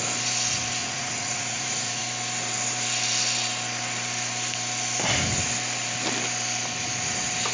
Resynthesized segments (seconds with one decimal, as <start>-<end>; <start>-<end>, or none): 0.8-2.0